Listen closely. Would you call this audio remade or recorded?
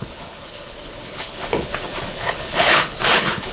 remade